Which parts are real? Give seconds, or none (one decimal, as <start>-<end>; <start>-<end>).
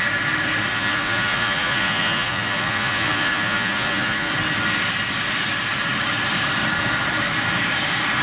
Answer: 0.0-0.7; 4.3-8.2